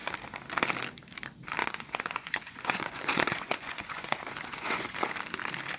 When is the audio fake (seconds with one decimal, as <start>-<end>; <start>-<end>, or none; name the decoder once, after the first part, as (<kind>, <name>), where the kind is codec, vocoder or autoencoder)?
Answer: 1.6-5.1 (vocoder, Vocos)